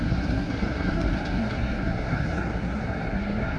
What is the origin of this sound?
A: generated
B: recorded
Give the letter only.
A